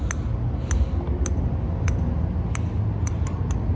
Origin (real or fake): real